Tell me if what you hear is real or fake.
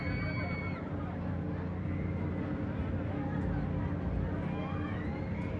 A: real